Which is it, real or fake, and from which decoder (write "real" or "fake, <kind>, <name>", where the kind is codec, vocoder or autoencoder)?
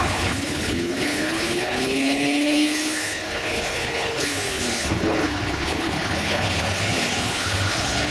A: fake, codec, HILCodec